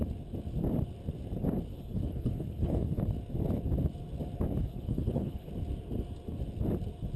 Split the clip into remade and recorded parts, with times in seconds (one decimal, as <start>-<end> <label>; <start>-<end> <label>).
0.0-1.7 recorded; 1.7-3.0 remade; 3.0-4.6 recorded; 4.6-5.5 remade; 5.5-7.2 recorded